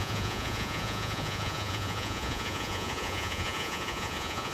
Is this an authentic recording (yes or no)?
no